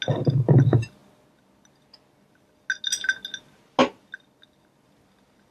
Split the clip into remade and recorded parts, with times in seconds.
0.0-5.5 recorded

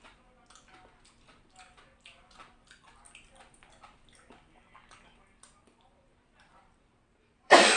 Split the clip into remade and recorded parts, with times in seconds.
0.0-5.7 recorded; 5.7-7.8 remade

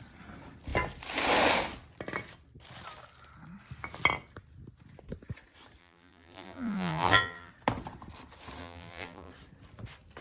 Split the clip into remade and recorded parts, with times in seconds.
0.0-5.8 recorded; 5.8-7.5 remade; 7.5-8.6 recorded; 8.6-9.3 remade; 9.3-10.2 recorded

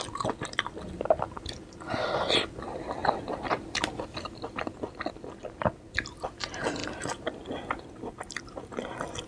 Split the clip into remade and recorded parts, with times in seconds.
0.0-3.0 recorded; 3.0-5.1 remade; 5.1-6.8 recorded; 6.8-8.1 remade; 8.1-9.3 recorded

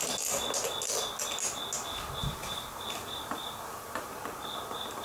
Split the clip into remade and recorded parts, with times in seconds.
0.0-2.2 recorded; 2.2-4.1 remade; 4.1-5.0 recorded